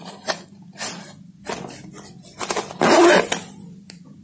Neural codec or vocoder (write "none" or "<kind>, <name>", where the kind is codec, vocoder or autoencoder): none